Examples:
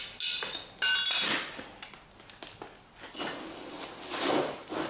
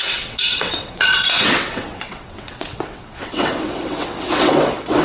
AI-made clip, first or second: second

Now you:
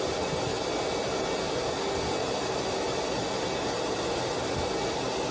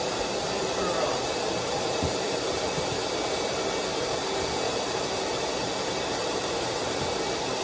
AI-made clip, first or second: second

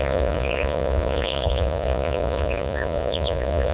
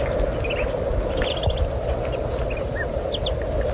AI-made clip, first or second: first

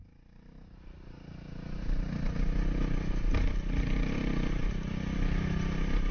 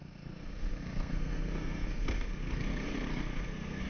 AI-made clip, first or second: second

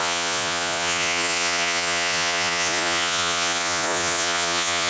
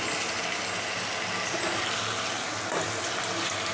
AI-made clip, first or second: first